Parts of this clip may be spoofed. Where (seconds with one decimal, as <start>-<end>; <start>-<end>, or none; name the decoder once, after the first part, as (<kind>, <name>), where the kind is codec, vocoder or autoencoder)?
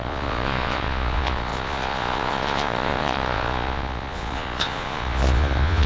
0.0-5.9 (vocoder, Vocos)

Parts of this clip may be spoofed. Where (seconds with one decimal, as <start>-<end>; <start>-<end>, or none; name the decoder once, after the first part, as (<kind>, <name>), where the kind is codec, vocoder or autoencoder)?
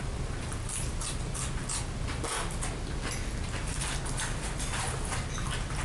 none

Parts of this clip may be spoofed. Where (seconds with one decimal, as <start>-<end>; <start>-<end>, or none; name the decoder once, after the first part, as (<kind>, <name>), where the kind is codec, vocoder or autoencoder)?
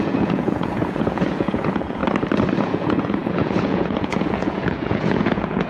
0.0-2.0 (vocoder, Vocos); 2.6-5.7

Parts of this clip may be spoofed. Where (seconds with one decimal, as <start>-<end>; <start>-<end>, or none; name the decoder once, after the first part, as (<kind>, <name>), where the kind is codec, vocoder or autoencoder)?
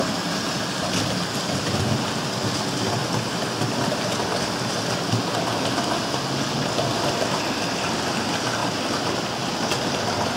none